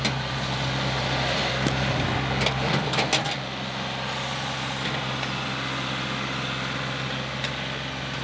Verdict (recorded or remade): recorded